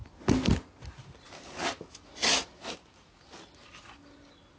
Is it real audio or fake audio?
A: real